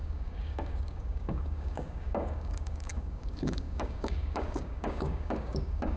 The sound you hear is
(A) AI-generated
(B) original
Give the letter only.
A